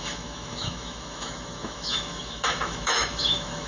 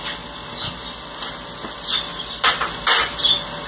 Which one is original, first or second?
second